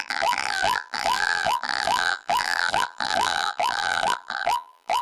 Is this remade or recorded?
remade